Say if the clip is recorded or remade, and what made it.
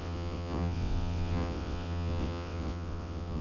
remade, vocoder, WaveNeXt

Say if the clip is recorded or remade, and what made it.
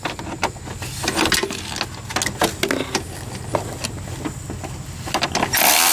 recorded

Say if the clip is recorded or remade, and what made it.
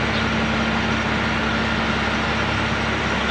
recorded